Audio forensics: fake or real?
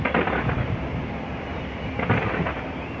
real